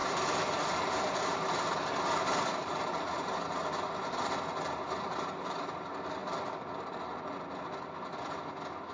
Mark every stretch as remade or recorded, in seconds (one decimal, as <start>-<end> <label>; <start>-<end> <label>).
0.0-1.8 remade; 1.8-2.5 recorded; 2.5-3.9 remade; 3.9-8.9 recorded

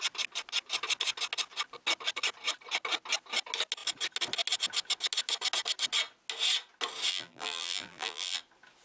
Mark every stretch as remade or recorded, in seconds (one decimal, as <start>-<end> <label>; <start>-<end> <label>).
0.0-7.1 recorded; 7.1-8.4 remade; 8.4-8.8 recorded

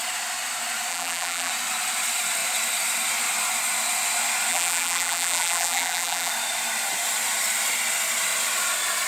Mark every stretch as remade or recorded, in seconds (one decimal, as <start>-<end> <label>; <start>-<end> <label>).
0.0-0.9 recorded; 0.9-1.5 remade; 1.5-4.5 recorded; 4.5-6.3 remade; 6.3-9.1 recorded

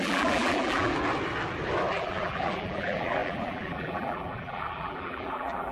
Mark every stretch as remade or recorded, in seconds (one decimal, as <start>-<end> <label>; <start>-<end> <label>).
0.0-0.9 remade; 0.9-1.9 recorded; 1.9-5.7 remade

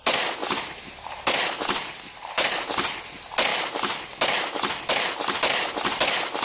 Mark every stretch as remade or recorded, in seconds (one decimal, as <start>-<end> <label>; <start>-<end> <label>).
0.0-0.4 recorded; 0.4-2.5 remade; 2.5-3.5 recorded; 3.5-5.1 remade; 5.1-6.4 recorded

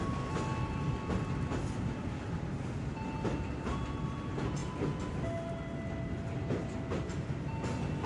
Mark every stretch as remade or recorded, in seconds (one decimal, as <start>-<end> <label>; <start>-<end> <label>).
0.0-8.1 recorded

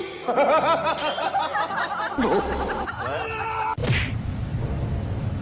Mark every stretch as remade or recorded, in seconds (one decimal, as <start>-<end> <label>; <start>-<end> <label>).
0.0-3.8 recorded; 3.8-4.6 remade; 4.6-5.4 recorded